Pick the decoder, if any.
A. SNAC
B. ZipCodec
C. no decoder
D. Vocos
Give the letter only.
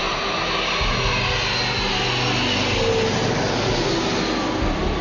C